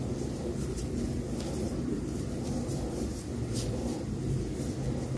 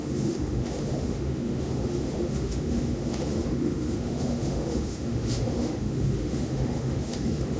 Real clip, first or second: first